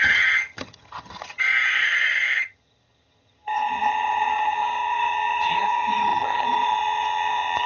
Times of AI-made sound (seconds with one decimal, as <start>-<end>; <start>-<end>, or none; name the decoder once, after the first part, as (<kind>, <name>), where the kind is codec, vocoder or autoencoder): 0.0-7.7 (vocoder, HiFi-GAN)